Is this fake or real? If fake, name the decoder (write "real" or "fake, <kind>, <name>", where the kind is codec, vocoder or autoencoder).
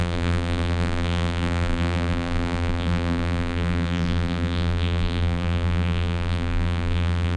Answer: fake, vocoder, BigVGAN v2